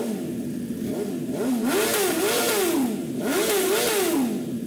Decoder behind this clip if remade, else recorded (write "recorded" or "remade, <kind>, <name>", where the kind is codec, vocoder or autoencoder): recorded